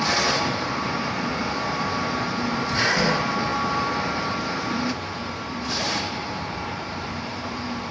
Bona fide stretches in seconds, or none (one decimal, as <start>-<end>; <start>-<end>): none